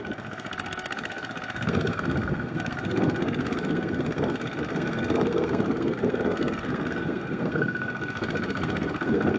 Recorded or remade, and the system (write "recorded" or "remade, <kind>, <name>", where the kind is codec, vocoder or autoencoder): remade, codec, SNAC